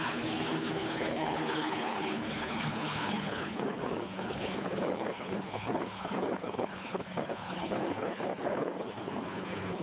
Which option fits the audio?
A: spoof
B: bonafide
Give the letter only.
A